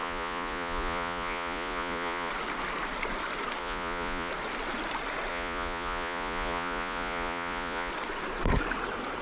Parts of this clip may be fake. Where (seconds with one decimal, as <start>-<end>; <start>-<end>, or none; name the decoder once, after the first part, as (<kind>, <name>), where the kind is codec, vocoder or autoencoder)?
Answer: 0.0-2.3 (vocoder, Vocos); 3.6-4.3; 5.3-7.9